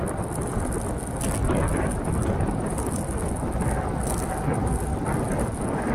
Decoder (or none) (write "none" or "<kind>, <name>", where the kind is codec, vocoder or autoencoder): none